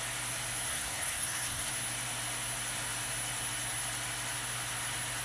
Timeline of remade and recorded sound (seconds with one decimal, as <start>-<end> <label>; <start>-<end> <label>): 0.0-0.7 recorded; 0.7-1.7 remade; 1.7-5.2 recorded